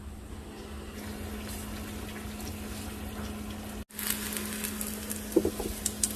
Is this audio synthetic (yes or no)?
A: no